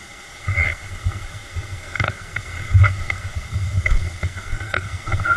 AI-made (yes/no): yes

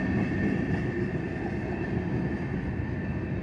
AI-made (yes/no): no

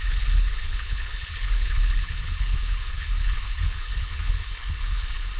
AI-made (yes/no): yes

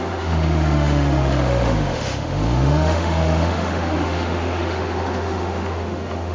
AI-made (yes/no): yes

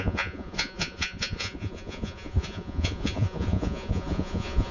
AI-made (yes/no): yes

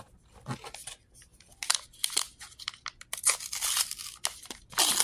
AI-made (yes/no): no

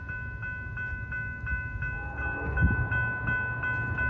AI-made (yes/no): no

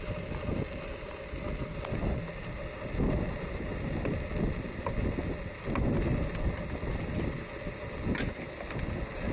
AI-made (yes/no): no